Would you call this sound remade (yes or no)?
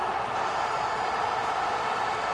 yes